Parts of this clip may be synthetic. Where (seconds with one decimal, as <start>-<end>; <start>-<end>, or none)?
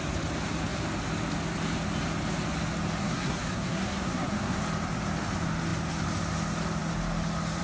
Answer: 3.0-4.6